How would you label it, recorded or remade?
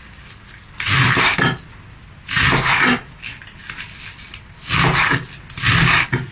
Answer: recorded